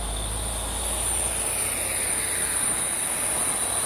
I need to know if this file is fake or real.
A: real